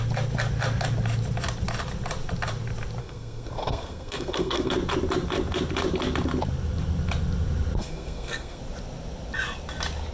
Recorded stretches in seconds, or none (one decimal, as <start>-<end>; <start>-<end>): 0.0-3.0; 4.7-7.8; 8.6-10.1